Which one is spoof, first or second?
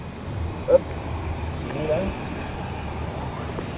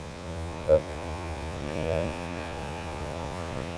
second